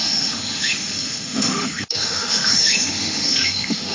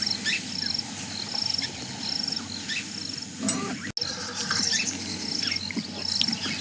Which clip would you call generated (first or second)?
first